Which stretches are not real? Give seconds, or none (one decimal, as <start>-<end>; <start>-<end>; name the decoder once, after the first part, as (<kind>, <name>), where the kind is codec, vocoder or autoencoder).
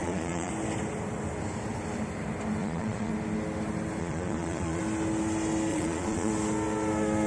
0.0-0.5 (vocoder, Vocos); 2.6-3.1; 4.0-4.8; 5.7-6.3